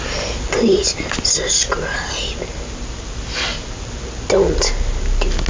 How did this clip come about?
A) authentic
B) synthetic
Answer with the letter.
A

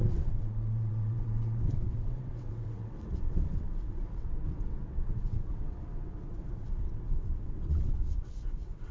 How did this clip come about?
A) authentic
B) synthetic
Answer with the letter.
B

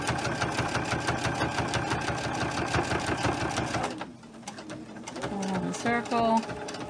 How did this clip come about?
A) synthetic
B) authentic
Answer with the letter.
B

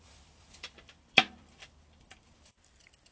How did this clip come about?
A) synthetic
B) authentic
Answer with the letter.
A